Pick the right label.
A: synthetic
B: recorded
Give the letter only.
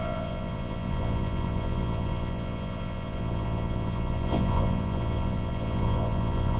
A